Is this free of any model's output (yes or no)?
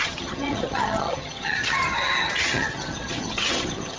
no